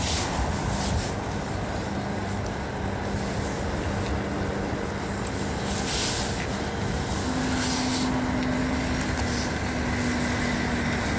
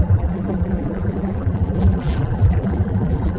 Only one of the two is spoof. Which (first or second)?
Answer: second